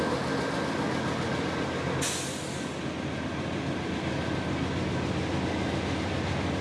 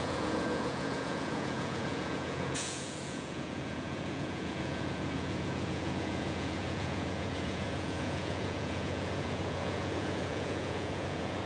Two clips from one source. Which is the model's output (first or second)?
second